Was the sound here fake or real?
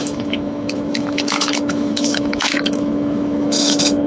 fake